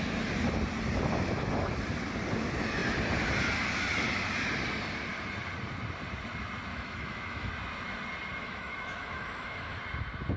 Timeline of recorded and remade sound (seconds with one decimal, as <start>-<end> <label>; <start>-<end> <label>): 0.0-6.7 recorded; 6.7-7.5 remade; 7.5-8.4 recorded; 8.4-9.8 remade; 9.8-10.4 recorded